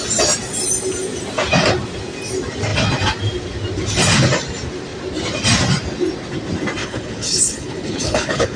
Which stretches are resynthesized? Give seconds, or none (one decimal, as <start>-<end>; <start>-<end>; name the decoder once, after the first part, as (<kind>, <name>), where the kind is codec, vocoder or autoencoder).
6.8-8.6 (codec, HILCodec)